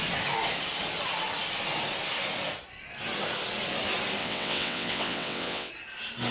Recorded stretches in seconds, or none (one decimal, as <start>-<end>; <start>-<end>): 0.0-4.2; 5.7-6.3